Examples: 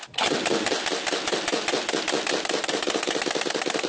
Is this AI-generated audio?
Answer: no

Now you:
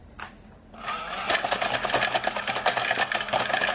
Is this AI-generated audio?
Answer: no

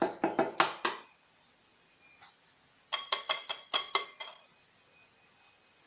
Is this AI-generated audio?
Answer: no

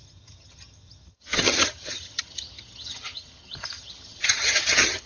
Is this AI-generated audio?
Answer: yes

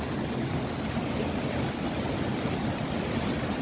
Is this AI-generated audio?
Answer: no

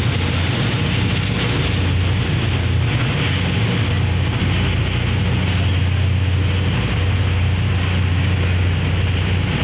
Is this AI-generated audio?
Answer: no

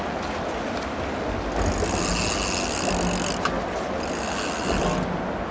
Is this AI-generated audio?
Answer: no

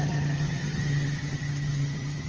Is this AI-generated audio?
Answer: yes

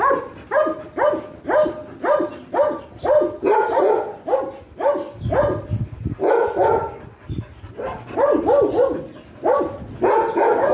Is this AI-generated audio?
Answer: no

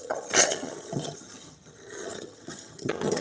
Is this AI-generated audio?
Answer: yes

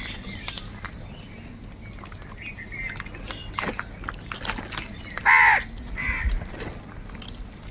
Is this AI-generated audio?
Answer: no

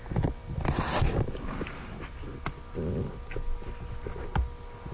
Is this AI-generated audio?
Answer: no